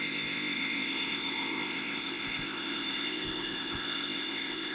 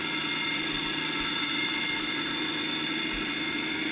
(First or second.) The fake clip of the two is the first